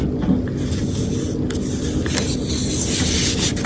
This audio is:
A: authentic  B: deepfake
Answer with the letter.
A